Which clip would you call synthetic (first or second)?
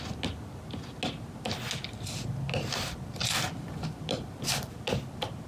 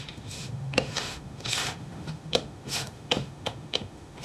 second